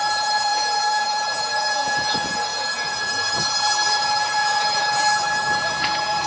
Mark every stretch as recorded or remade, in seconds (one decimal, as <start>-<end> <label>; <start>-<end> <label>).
0.0-6.3 remade